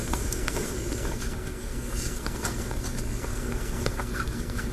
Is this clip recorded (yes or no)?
no